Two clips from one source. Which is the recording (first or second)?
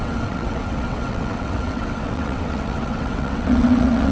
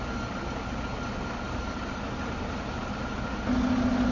second